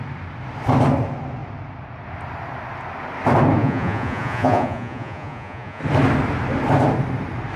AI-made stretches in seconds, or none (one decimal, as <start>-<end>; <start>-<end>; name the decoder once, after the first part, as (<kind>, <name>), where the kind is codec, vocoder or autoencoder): 3.6-5.8 (vocoder, Vocos)